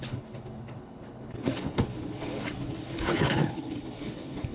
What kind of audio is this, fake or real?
fake